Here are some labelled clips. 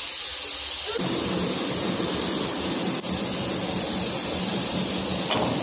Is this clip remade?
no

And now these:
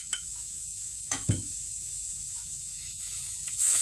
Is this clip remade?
yes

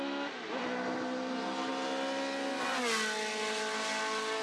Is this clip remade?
no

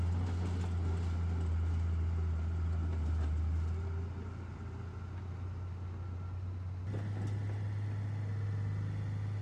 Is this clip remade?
no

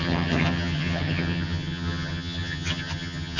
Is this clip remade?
yes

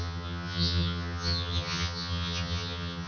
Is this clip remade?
yes